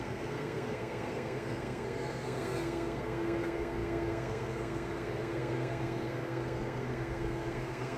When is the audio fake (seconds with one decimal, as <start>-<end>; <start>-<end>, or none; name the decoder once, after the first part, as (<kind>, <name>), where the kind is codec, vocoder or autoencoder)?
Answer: 0.0-8.0 (codec, SNAC)